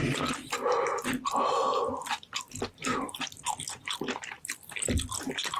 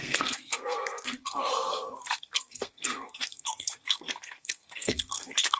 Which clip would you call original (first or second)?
first